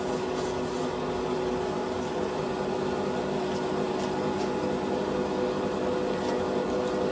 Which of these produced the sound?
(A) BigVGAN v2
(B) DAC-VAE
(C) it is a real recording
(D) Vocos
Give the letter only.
C